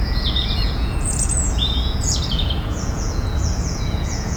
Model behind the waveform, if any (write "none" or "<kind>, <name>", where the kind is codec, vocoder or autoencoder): vocoder, Vocos